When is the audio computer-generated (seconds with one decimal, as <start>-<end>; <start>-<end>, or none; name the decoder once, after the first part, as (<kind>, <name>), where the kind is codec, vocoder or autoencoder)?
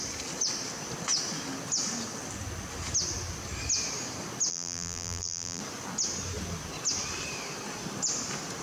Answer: 4.5-5.6 (vocoder, BigVGAN v2)